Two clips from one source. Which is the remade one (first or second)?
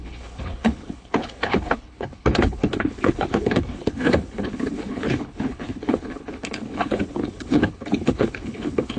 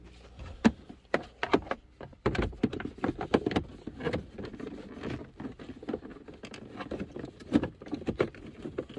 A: first